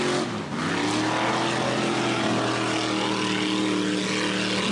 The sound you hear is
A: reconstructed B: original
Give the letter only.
B